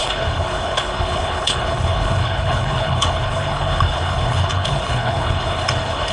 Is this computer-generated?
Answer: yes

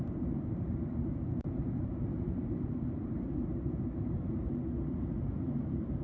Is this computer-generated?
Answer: yes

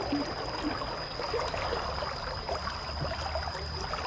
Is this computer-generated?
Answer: no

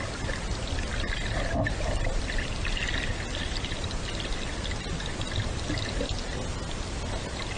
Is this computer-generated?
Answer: no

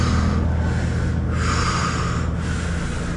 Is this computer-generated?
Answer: no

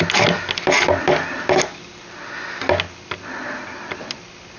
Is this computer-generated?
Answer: no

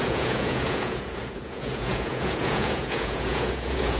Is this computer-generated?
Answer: yes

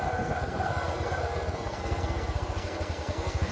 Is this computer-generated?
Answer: yes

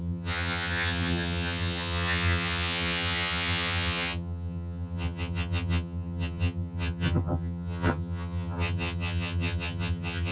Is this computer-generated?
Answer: yes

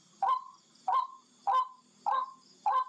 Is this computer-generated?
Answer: no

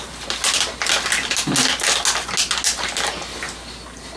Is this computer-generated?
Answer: no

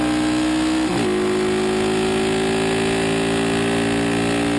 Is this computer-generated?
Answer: no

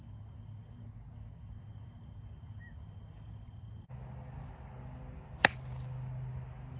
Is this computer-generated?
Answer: no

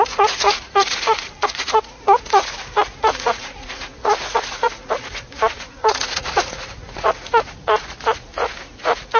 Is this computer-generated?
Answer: yes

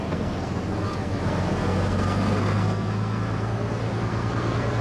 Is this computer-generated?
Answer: yes